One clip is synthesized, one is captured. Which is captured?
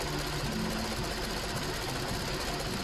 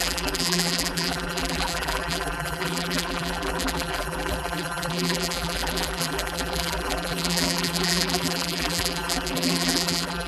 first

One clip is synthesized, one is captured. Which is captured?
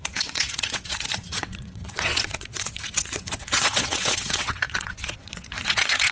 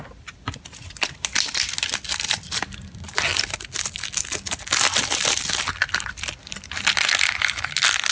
second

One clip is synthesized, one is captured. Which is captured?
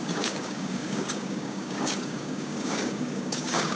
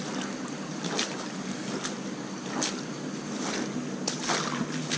second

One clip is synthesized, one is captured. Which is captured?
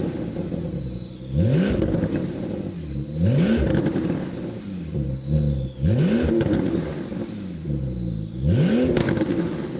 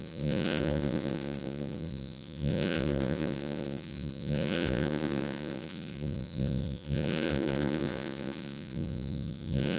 first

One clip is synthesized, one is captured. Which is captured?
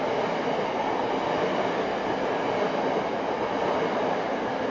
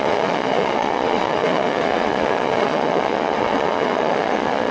first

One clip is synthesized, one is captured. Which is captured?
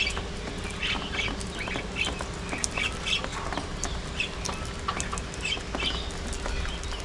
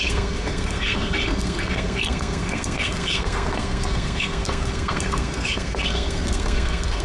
first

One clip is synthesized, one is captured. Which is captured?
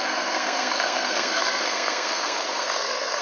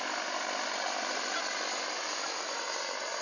second